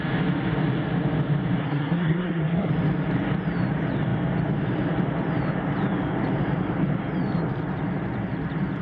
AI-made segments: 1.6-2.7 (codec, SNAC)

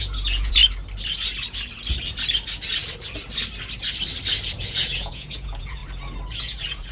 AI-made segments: 0.0-0.6 (vocoder, Vocos); 4.7-5.8; 6.3-6.9